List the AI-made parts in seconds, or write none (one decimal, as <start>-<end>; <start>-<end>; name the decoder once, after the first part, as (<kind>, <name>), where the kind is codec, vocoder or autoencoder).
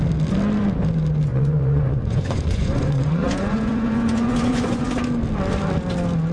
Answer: 1.3-4.9 (vocoder, Vocos)